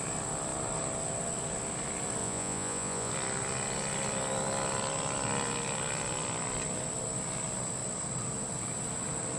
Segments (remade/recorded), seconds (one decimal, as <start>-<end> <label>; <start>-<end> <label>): 0.0-2.2 recorded; 2.2-3.1 remade; 3.1-9.4 recorded